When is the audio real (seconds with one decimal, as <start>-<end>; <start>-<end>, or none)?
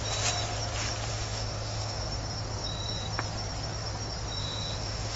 0.0-1.1; 2.0-4.4